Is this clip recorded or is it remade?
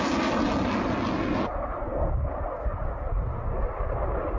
recorded